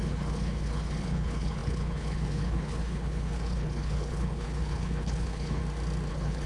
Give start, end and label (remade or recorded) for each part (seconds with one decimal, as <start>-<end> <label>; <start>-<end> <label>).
0.0-5.6 remade; 5.6-6.1 recorded; 6.1-6.5 remade